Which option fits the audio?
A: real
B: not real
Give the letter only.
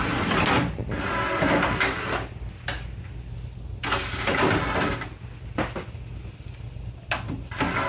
A